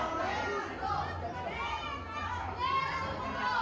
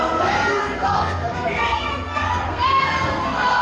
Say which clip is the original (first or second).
first